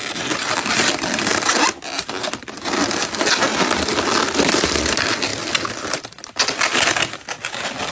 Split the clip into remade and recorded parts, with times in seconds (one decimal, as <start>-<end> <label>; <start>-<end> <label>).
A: 0.0-7.9 recorded